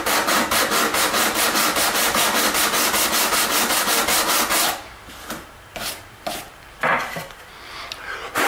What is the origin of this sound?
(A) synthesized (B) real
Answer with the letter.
A